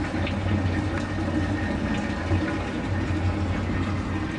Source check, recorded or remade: recorded